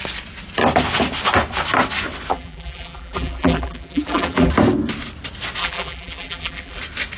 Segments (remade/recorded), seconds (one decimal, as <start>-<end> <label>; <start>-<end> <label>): 0.0-2.3 recorded; 2.3-4.5 remade; 4.5-5.6 recorded; 5.6-6.8 remade; 6.8-7.2 recorded